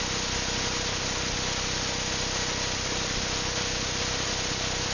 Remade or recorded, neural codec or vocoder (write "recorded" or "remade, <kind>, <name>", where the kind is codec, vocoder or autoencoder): recorded